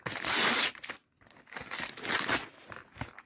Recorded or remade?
recorded